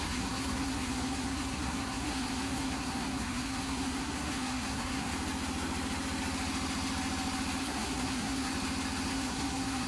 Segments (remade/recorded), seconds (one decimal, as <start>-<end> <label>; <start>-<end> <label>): 0.0-5.1 remade; 5.1-7.6 recorded; 7.6-8.5 remade; 8.5-9.1 recorded; 9.1-9.9 remade